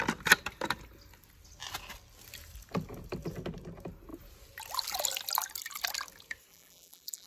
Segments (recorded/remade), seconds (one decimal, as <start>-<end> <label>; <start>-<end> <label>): 0.0-6.5 recorded; 6.5-7.3 remade